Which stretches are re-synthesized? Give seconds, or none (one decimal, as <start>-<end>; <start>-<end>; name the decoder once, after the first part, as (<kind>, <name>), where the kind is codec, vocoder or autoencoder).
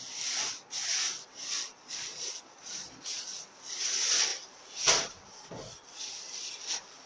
4.3-5.5 (vocoder, BigVGAN v2)